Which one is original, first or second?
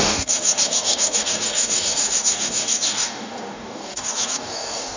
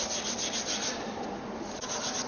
second